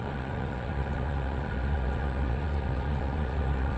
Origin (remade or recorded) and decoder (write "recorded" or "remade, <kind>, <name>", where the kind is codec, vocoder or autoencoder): remade, vocoder, Vocos